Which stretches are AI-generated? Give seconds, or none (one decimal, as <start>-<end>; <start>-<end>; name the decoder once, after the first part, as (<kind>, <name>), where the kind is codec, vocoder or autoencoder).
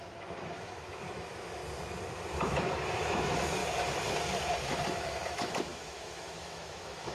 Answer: 0.0-1.6 (autoencoder, DAC-VAE); 2.3-3.6; 4.9-7.1